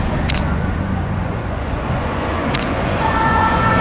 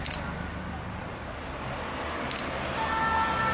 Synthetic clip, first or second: first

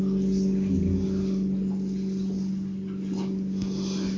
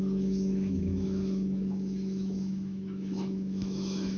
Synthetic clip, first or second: second